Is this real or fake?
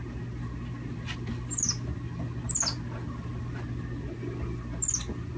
real